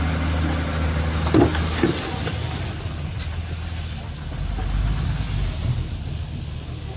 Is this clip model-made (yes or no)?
no